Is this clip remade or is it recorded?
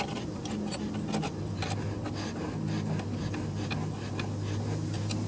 recorded